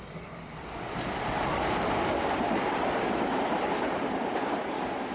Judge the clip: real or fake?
real